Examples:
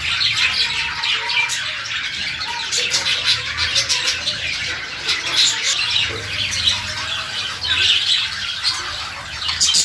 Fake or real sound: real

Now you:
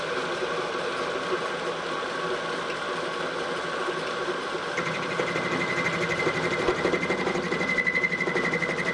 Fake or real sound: real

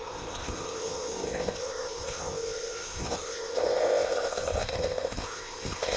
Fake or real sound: fake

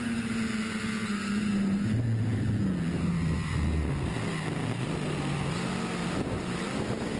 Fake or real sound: real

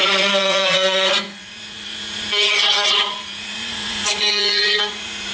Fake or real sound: fake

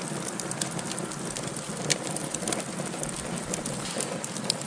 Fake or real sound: real